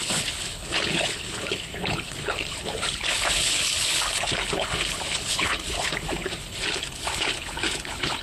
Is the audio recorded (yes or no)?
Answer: no